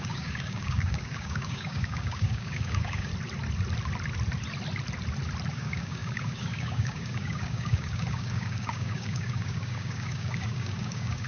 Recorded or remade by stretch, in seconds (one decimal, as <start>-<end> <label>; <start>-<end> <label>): 0.0-3.1 remade; 3.1-5.5 recorded; 5.5-11.3 remade